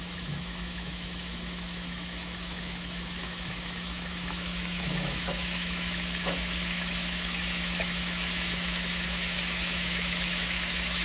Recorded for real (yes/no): no